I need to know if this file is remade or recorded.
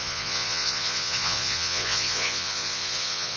remade